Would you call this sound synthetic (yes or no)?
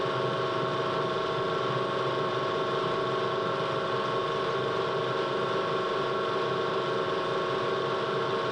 no